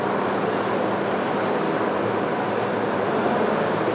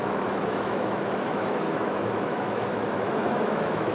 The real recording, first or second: first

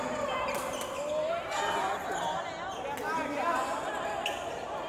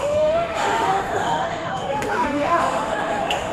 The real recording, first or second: first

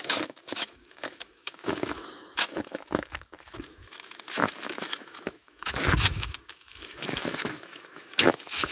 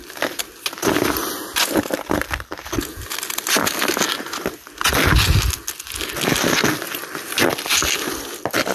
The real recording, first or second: second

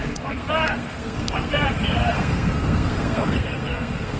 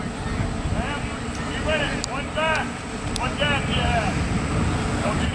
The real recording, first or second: second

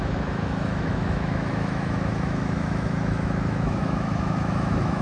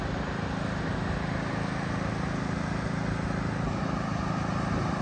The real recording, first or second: second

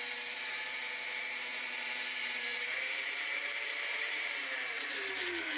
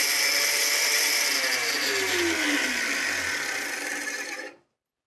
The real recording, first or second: second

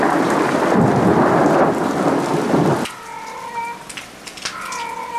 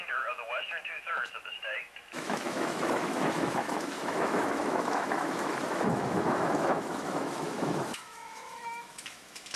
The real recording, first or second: first